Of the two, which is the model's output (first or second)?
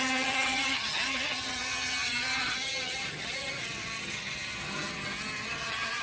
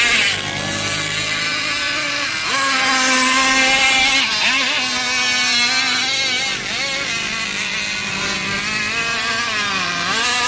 first